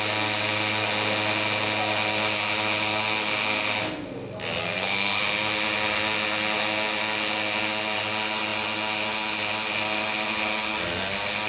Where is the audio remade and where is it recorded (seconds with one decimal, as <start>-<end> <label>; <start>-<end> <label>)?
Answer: 0.0-4.6 recorded; 4.6-5.2 remade; 5.2-11.5 recorded